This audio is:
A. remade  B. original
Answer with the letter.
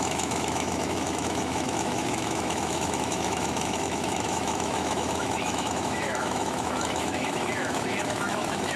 A